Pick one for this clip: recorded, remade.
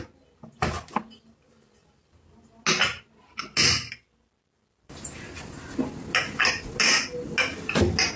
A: recorded